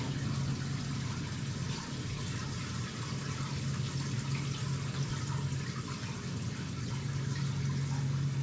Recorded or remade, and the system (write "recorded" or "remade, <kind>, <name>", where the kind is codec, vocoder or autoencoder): recorded